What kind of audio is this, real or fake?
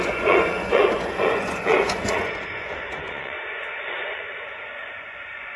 fake